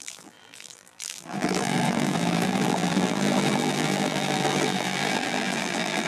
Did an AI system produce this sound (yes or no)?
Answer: yes